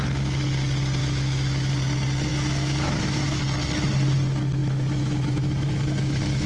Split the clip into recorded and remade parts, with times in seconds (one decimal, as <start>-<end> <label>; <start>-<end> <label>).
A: 0.0-1.0 recorded; 1.0-1.7 remade; 1.7-2.3 recorded; 2.3-3.4 remade; 3.4-4.6 recorded; 4.6-6.5 remade